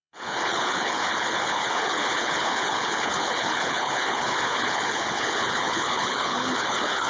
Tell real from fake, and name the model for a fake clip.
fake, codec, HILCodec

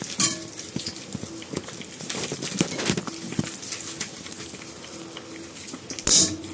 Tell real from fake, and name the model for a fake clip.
real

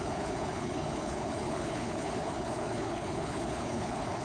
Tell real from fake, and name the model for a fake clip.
fake, codec, HILCodec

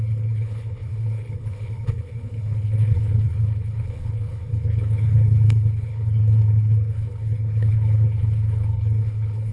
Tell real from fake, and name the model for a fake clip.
fake, codec, HILCodec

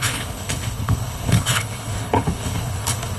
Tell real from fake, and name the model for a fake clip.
fake, codec, HILCodec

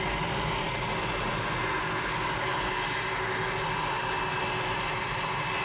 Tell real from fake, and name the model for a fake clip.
real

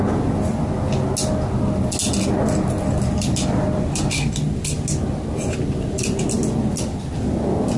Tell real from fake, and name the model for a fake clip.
real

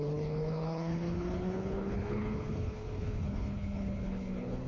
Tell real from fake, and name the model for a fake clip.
fake, codec, HILCodec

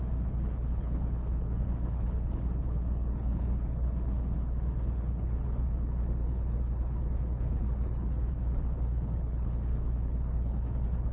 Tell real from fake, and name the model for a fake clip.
fake, codec, HILCodec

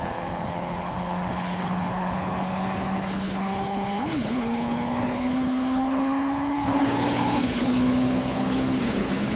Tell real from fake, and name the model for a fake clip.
fake, codec, HILCodec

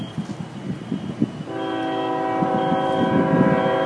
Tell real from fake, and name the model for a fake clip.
real